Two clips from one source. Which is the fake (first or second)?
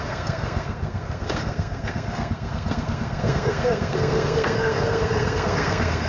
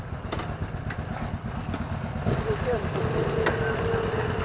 first